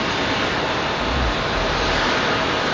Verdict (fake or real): real